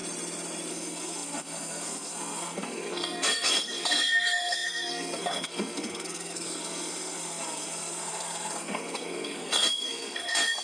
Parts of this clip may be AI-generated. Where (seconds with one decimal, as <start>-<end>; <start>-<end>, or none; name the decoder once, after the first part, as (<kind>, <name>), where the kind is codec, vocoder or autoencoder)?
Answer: 0.7-10.6 (codec, SNAC)